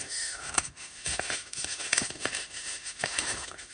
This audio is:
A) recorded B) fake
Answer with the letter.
B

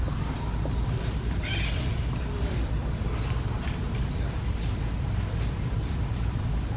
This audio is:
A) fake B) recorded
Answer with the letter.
A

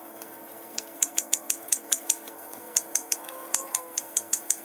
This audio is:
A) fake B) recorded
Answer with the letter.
A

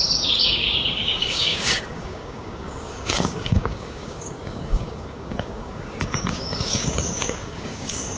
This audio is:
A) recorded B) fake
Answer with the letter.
B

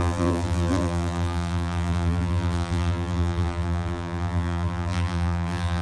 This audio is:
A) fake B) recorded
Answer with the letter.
A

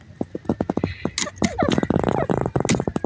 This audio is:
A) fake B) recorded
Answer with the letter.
B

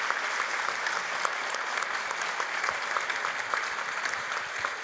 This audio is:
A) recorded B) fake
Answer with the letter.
A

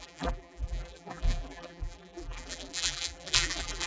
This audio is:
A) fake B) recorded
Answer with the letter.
A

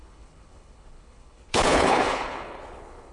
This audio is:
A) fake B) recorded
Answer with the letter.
A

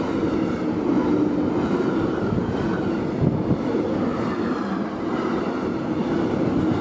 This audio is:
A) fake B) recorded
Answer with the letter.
B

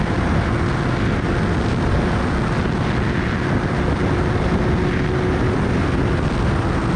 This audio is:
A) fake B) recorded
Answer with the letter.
B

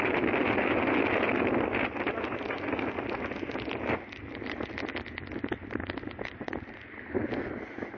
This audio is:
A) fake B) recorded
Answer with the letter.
B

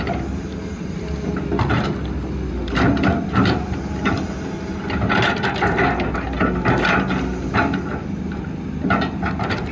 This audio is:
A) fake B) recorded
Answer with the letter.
B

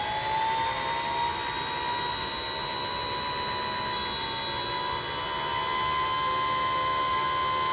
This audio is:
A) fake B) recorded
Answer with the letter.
B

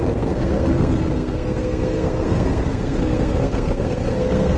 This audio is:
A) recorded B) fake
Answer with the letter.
B